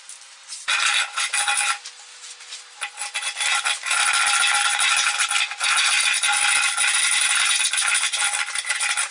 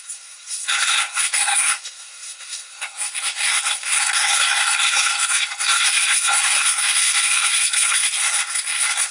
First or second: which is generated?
second